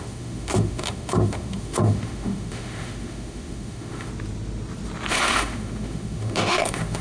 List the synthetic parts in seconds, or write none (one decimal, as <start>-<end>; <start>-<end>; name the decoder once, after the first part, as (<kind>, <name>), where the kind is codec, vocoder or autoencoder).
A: 0.0-4.1 (autoencoder, DAC-VAE); 5.1-7.0